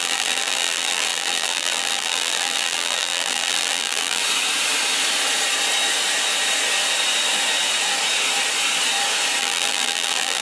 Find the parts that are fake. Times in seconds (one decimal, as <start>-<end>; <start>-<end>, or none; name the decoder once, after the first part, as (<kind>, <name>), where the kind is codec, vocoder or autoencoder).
0.0-4.2 (vocoder, BigVGAN v2); 9.4-10.4